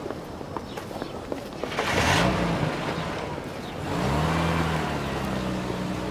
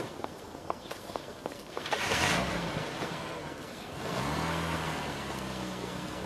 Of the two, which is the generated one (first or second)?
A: second